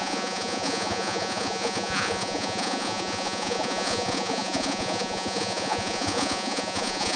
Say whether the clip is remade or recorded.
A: remade